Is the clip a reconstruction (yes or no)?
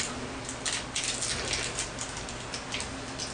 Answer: no